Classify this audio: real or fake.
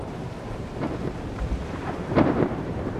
fake